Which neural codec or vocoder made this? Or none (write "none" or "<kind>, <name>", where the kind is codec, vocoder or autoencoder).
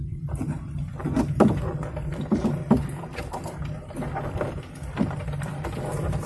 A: none